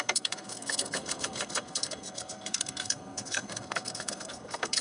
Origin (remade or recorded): remade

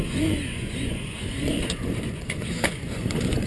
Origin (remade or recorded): remade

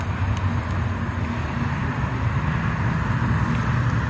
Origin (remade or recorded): recorded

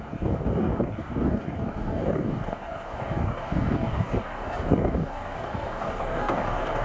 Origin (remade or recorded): remade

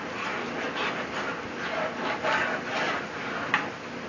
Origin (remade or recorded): recorded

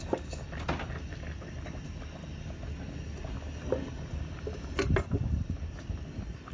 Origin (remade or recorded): recorded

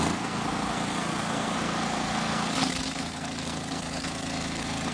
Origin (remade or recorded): remade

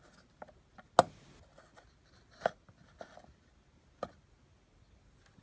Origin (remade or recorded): recorded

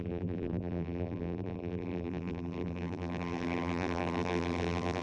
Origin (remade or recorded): remade